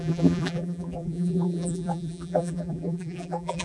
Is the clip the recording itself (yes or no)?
no